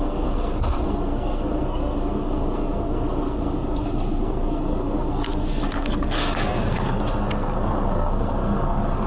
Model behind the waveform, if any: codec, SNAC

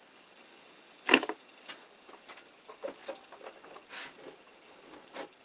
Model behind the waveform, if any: none